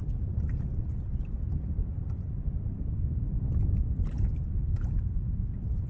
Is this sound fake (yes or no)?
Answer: no